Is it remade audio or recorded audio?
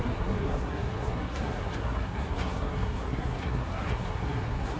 remade